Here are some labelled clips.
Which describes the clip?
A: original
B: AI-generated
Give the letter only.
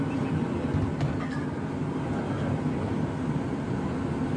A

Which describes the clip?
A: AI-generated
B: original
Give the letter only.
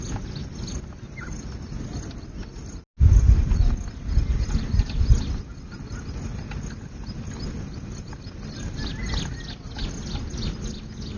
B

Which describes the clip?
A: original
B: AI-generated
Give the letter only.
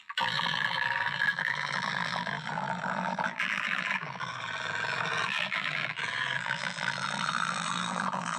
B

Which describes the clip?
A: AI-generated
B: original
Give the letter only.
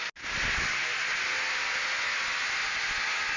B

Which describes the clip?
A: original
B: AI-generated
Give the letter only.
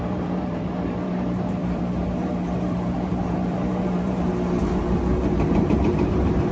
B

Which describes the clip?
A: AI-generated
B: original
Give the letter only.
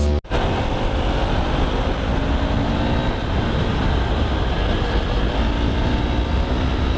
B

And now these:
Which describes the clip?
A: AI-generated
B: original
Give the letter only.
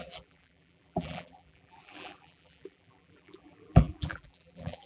A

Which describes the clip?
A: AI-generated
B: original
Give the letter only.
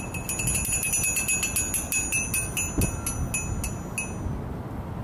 B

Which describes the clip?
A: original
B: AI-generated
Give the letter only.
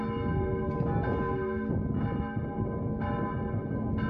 A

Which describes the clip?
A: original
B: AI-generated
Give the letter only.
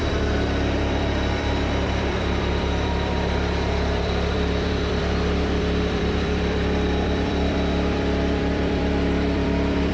B